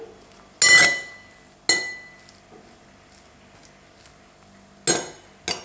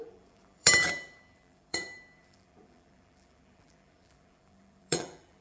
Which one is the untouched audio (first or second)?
first